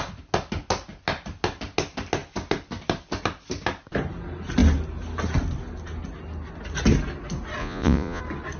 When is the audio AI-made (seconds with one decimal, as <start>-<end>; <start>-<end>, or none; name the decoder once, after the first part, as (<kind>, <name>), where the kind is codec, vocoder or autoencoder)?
7.6-8.2 (vocoder, Vocos)